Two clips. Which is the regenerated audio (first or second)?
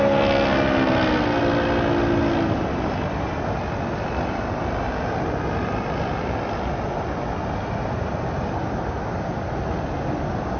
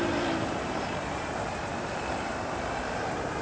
second